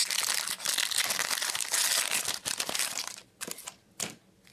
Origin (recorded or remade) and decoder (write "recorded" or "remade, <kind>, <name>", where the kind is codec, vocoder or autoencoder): recorded